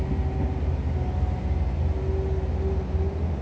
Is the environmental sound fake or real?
real